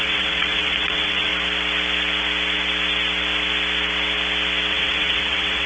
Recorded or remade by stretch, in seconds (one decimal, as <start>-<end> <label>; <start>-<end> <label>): 0.0-1.3 remade; 1.3-4.7 recorded; 4.7-5.7 remade